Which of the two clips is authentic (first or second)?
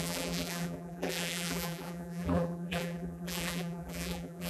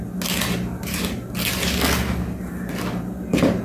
second